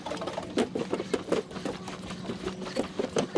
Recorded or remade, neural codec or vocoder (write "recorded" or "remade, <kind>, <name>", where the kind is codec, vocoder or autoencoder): recorded